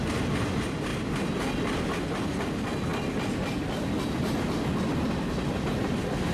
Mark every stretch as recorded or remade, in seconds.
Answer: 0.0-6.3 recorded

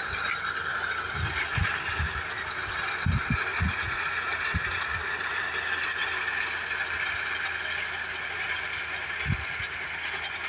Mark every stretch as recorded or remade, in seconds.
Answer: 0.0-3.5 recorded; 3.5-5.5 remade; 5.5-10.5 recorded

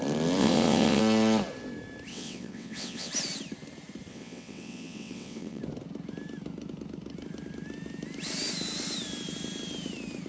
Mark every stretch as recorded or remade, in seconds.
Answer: 0.0-0.4 recorded; 0.4-1.0 remade; 1.0-2.1 recorded; 2.1-3.1 remade; 3.1-4.1 recorded; 4.1-5.6 remade; 5.6-10.3 recorded

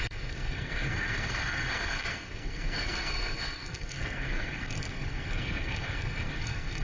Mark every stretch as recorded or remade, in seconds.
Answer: 0.0-6.8 remade